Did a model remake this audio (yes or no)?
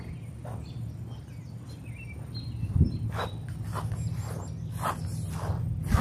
no